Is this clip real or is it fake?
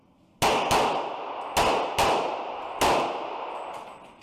real